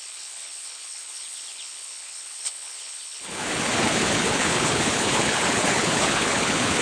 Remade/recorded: remade